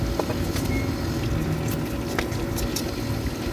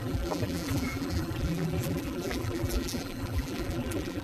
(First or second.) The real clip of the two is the first